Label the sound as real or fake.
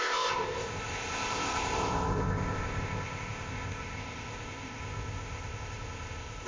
fake